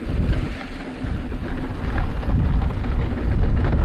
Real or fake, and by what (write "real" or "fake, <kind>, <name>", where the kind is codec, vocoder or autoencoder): real